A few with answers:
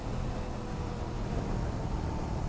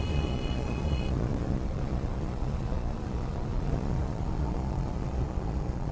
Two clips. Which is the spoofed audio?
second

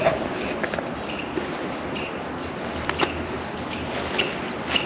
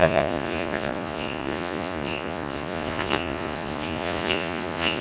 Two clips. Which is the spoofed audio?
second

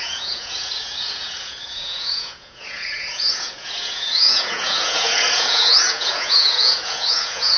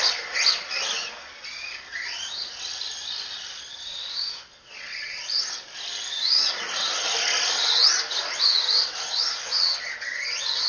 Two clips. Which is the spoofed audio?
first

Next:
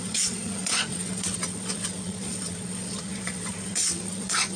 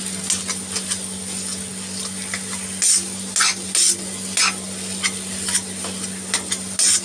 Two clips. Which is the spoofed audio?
first